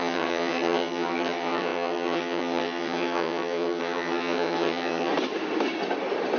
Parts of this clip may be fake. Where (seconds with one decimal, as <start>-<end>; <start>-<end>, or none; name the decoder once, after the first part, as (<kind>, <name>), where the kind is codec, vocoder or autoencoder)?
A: 0.0-5.1 (vocoder, HiFi-GAN)